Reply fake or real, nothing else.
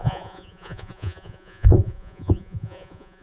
fake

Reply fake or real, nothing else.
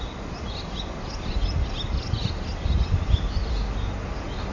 real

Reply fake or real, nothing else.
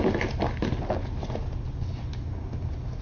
real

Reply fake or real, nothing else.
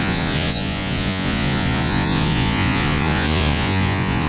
fake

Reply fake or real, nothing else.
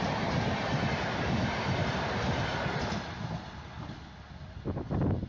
real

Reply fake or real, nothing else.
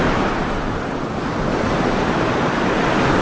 real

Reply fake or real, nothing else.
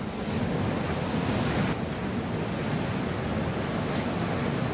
real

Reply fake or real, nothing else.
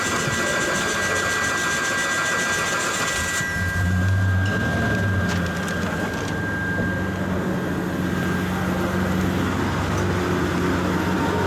real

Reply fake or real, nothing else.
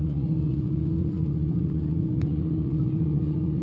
fake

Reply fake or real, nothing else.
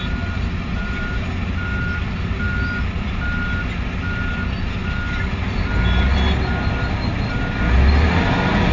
real